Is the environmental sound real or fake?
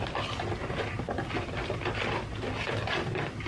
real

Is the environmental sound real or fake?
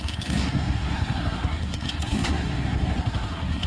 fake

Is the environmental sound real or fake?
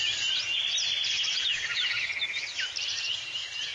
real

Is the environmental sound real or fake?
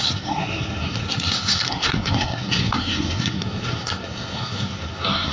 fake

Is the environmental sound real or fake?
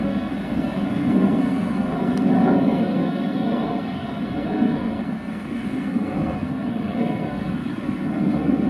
fake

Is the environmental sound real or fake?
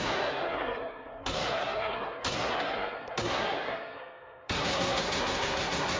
fake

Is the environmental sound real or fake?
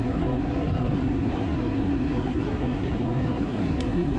fake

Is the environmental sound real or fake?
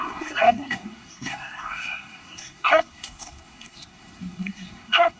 fake